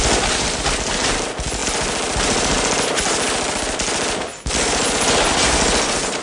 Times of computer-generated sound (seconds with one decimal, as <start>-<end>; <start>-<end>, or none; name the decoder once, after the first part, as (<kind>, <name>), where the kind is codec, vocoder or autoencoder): none